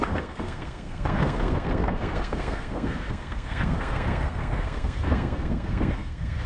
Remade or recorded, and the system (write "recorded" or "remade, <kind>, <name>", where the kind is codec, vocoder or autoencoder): remade, codec, SNAC